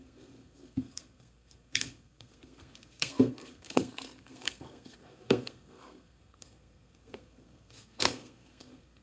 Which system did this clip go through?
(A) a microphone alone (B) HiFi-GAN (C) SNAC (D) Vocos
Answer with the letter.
C